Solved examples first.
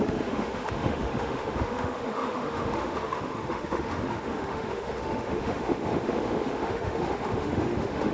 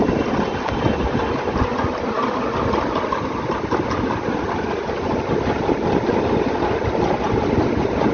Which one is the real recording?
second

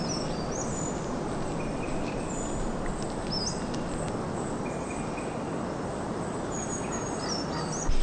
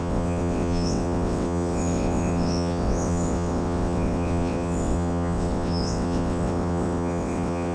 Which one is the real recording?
first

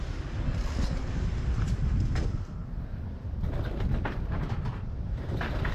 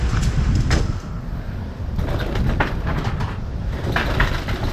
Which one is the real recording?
second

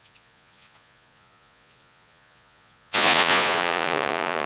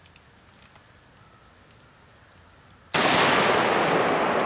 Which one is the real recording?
second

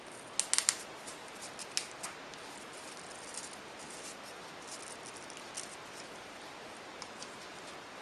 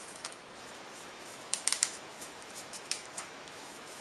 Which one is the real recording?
first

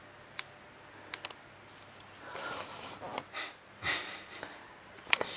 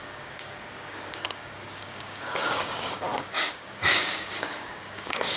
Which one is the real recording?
first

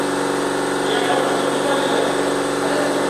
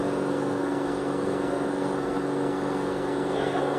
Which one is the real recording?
first